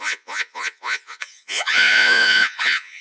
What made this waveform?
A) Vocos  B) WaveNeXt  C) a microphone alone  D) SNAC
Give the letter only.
A